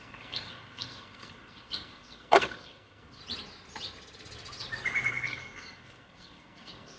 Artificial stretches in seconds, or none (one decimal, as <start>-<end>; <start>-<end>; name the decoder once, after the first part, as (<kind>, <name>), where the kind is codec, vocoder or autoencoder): 0.0-3.2 (codec, SNAC); 5.1-7.0